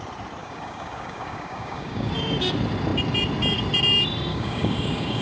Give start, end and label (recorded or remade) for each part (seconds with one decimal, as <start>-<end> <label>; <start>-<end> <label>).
0.0-0.4 recorded; 0.4-2.1 remade; 2.1-4.3 recorded; 4.3-5.2 remade